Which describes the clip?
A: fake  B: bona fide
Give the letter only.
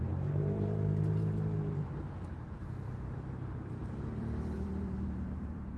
A